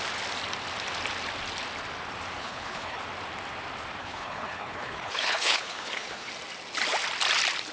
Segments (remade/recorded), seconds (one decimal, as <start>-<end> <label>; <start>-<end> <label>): 0.0-2.4 recorded; 2.4-3.0 remade; 3.0-4.0 recorded; 4.0-6.3 remade; 6.3-7.7 recorded